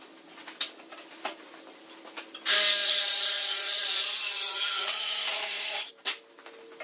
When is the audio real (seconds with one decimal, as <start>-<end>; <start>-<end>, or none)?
0.0-2.8; 5.9-6.8